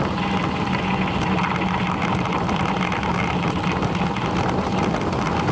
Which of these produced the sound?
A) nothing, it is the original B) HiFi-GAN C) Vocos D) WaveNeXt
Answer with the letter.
A